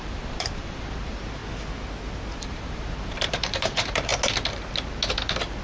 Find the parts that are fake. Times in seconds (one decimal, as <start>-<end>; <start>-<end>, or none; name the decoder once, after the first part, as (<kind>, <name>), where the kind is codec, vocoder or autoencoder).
0.0-1.4 (vocoder, BigVGAN v2); 2.4-4.1